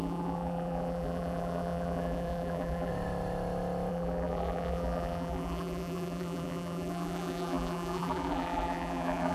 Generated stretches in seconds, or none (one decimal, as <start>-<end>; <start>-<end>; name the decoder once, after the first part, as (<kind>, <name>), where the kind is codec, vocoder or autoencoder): 0.0-2.9 (vocoder, BigVGAN v2); 3.9-9.3